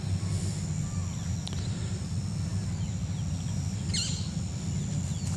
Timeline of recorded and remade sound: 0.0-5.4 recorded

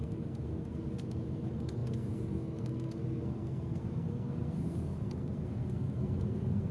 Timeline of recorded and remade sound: 0.0-6.7 remade

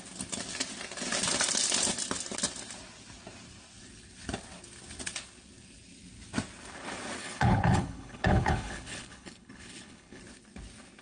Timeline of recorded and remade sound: 0.0-7.2 recorded; 7.2-10.2 remade; 10.2-11.0 recorded

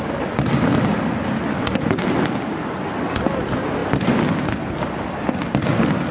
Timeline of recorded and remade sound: 0.0-6.1 recorded